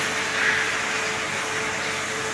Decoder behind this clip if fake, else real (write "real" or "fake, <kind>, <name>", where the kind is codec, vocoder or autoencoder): real